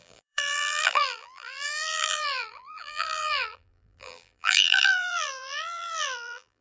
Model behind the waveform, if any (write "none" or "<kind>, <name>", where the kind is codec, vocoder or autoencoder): vocoder, BigVGAN v2